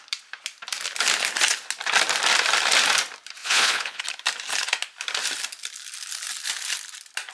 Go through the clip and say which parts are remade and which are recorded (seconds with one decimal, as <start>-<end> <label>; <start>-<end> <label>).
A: 0.0-3.4 recorded; 3.4-4.0 remade; 4.0-7.3 recorded